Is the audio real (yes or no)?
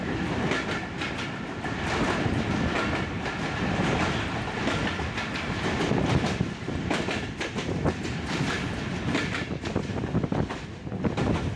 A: yes